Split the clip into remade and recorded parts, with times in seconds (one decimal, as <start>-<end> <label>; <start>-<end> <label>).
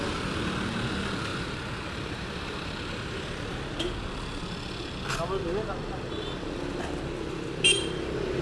0.0-1.3 recorded; 1.3-3.4 remade; 3.4-8.4 recorded